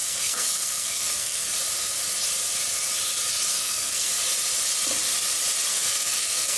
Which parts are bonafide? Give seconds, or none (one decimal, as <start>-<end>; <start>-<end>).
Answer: 1.5-3.5; 4.1-5.7